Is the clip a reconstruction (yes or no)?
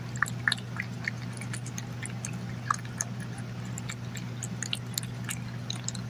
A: no